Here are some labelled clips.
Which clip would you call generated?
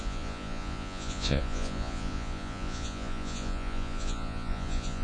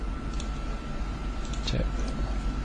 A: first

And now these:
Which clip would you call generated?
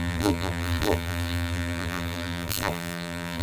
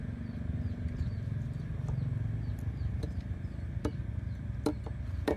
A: first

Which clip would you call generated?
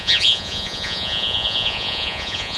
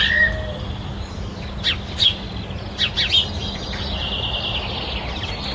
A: first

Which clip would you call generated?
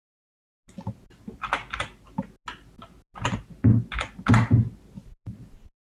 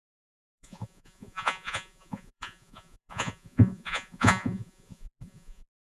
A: second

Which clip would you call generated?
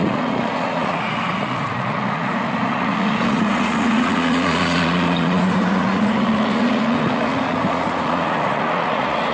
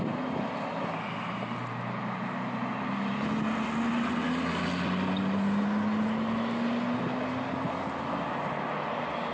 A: first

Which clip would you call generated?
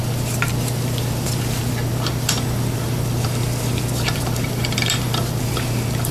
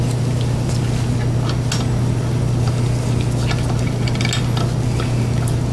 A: first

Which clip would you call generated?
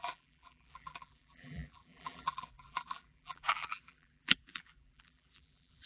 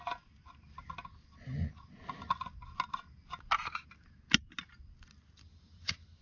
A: first